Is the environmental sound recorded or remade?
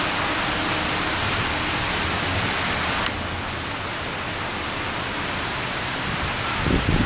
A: recorded